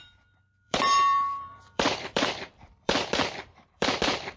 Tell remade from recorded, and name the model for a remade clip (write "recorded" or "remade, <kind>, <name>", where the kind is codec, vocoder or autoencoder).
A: remade, vocoder, BigVGAN v2